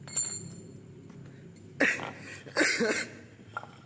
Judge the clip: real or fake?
real